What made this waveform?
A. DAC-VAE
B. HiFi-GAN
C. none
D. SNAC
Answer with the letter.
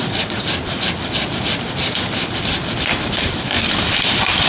C